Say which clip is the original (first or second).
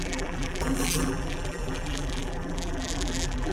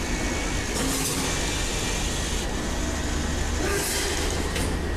second